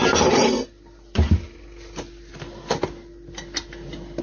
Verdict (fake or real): real